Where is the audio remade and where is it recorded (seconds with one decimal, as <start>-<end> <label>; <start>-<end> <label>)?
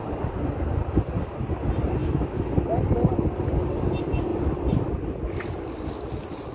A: 0.0-6.5 recorded